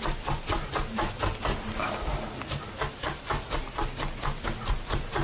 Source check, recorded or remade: recorded